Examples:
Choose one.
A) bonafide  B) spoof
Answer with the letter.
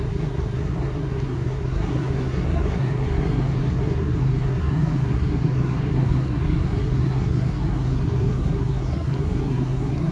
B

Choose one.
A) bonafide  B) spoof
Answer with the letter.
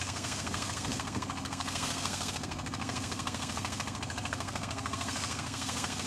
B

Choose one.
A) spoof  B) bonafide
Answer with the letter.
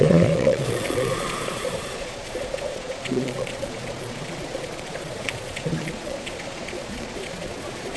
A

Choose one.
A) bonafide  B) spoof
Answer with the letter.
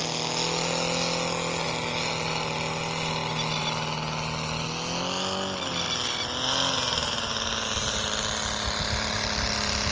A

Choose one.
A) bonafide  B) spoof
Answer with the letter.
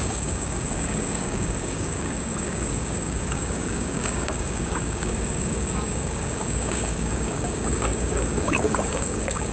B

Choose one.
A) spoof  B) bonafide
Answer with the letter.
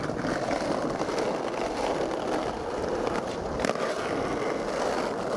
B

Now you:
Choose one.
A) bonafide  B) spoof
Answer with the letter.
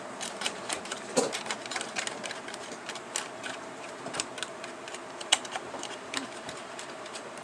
B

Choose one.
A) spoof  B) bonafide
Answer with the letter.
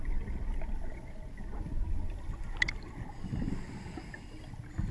B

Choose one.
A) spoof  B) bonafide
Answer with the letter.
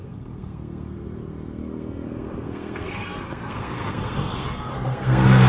A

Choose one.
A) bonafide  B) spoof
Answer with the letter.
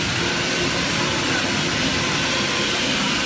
A